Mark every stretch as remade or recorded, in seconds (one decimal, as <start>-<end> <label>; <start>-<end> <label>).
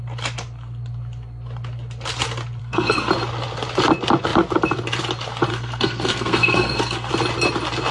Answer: 0.0-2.6 recorded; 2.6-3.1 remade; 3.1-5.5 recorded; 5.5-7.1 remade; 7.1-7.9 recorded